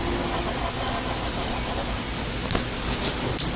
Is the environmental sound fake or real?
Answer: real